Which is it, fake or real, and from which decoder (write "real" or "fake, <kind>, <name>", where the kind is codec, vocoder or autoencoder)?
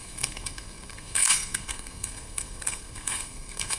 fake, codec, SNAC